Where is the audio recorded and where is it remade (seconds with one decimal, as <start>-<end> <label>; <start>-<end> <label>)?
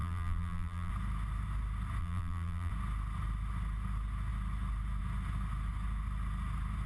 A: 0.0-0.9 remade; 0.9-2.0 recorded; 2.0-2.7 remade; 2.7-6.9 recorded